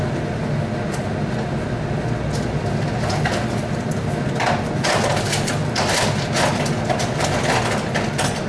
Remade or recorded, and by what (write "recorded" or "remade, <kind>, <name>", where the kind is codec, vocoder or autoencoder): recorded